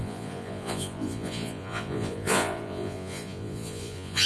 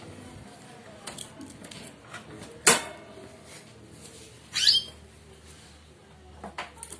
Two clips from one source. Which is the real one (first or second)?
second